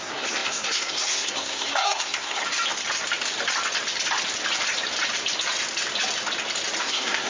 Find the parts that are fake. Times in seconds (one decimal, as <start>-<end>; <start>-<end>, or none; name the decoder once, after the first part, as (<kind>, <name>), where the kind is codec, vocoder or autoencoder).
0.0-2.4 (codec, SNAC); 6.8-7.3